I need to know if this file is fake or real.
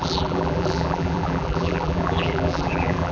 fake